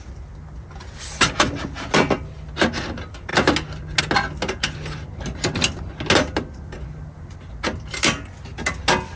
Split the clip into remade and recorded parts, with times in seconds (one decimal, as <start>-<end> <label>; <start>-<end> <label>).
0.0-9.2 recorded